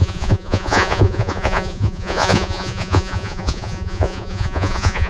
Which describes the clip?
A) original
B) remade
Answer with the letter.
B